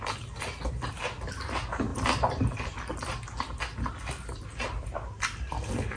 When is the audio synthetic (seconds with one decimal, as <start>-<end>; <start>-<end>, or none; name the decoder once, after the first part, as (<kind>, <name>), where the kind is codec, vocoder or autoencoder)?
none